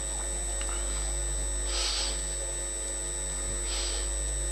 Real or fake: real